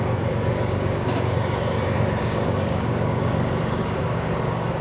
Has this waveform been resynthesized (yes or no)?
yes